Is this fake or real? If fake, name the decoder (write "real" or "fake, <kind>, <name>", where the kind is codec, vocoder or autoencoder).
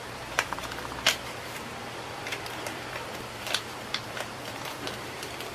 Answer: fake, vocoder, BigVGAN v2